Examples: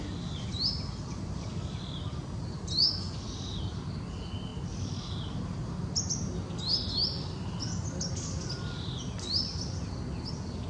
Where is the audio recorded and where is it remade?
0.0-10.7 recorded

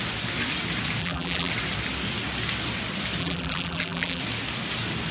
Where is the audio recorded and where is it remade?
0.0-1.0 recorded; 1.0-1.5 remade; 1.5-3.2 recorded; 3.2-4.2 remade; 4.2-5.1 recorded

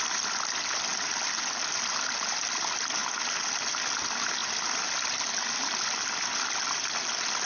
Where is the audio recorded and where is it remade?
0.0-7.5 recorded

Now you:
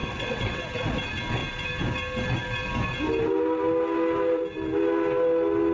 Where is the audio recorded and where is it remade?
0.0-0.6 remade; 0.6-5.7 recorded

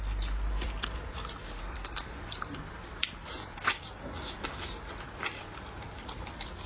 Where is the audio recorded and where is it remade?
0.0-1.6 recorded; 1.6-2.2 remade; 2.2-6.7 recorded

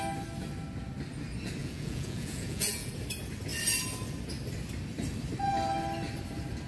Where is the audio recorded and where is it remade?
0.0-1.6 recorded; 1.6-2.9 remade; 2.9-6.7 recorded

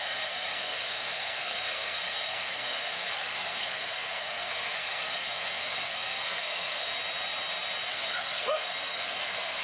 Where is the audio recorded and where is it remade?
0.0-6.9 remade; 6.9-7.9 recorded; 7.9-9.6 remade